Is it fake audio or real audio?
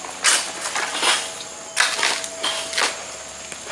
real